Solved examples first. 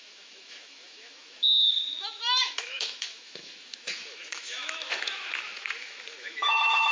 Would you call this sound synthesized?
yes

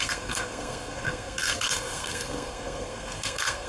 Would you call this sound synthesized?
yes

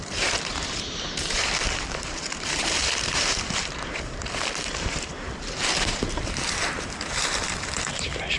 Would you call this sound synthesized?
yes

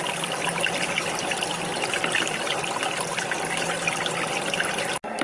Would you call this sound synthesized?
no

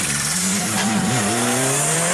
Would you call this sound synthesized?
yes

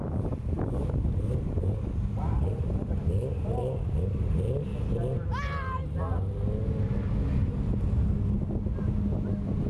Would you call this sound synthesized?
no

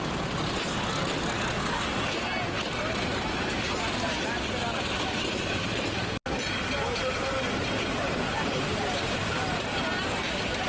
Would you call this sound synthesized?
no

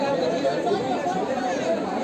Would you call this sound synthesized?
yes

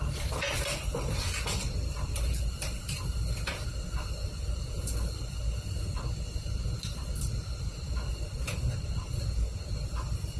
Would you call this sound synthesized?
no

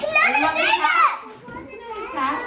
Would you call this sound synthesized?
no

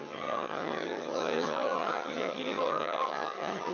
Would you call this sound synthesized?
yes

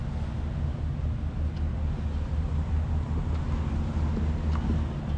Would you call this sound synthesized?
no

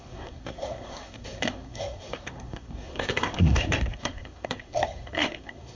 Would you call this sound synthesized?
yes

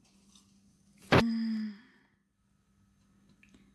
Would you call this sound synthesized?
no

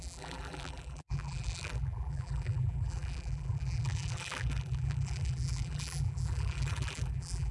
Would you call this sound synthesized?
yes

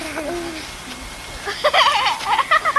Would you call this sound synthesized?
no